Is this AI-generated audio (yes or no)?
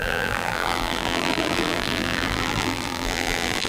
yes